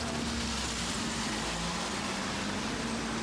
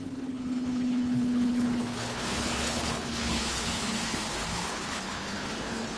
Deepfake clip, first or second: second